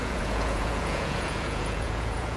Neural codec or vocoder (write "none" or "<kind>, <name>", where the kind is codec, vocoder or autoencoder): vocoder, Vocos